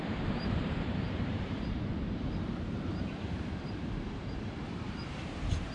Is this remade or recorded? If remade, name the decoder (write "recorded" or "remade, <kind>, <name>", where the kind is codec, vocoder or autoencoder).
remade, vocoder, BigVGAN v2